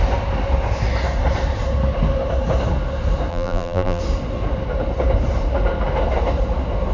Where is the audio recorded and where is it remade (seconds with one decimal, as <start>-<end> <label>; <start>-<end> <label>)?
0.0-3.3 recorded; 3.3-4.0 remade; 4.0-6.9 recorded